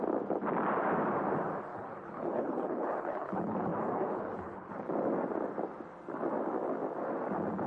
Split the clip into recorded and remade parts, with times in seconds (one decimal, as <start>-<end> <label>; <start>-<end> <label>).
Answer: 0.0-1.7 recorded; 1.7-4.7 remade; 4.7-7.7 recorded